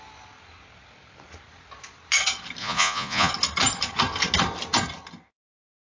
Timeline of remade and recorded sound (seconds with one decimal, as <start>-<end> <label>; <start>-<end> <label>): 0.0-2.6 recorded; 2.6-3.3 remade; 3.3-6.0 recorded